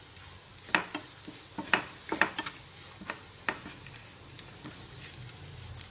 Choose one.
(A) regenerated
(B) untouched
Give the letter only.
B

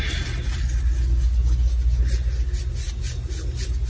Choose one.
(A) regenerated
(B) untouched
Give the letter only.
B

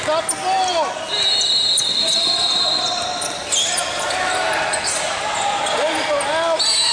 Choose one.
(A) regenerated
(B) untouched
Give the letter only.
B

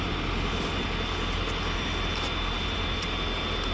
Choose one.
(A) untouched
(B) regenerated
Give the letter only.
A